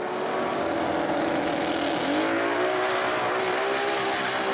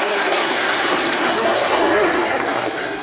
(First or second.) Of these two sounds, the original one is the first